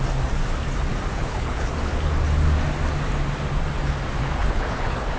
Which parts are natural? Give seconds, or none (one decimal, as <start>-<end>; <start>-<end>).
0.0-1.1; 1.7-4.2